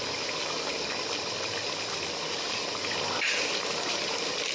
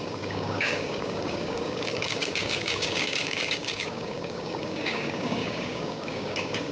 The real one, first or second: first